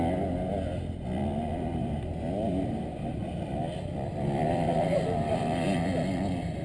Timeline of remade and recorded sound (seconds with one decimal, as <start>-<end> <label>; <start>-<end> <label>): 0.0-1.8 recorded; 1.8-5.8 remade; 5.8-6.6 recorded